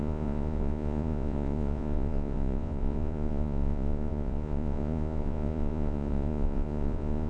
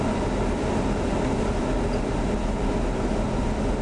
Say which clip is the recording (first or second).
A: second